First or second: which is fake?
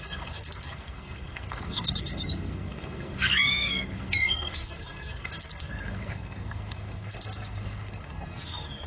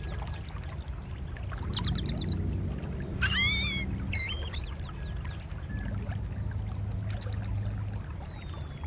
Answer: first